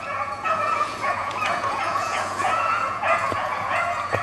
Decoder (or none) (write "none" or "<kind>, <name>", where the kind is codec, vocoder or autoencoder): vocoder, Vocos